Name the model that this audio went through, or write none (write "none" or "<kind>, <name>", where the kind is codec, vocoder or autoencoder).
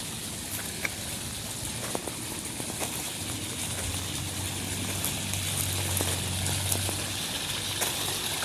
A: none